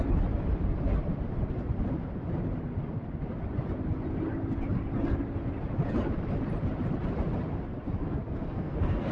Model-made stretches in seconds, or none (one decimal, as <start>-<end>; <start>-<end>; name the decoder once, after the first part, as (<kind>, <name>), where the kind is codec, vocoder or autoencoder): 8.0-9.1 (codec, SNAC)